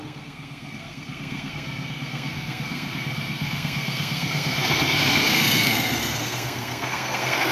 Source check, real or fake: fake